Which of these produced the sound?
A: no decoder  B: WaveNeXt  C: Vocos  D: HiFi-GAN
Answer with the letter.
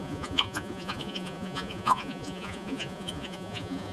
C